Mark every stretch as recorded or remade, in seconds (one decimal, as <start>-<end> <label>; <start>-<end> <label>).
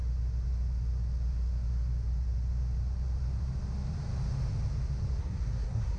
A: 0.0-5.2 recorded; 5.2-6.0 remade